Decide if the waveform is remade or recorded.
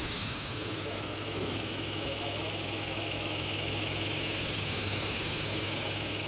remade